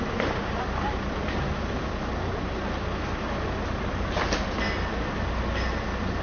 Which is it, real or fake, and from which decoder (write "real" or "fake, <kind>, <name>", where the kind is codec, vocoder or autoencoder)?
real